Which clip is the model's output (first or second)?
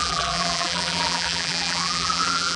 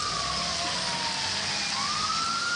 first